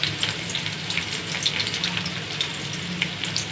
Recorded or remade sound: recorded